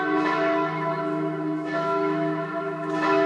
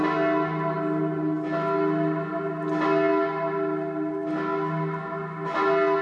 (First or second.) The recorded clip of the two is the second